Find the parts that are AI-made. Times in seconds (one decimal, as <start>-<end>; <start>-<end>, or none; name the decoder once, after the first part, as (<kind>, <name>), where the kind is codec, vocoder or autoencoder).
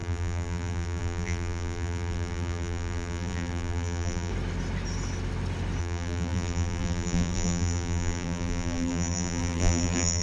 0.0-4.3 (vocoder, BigVGAN v2); 5.8-10.2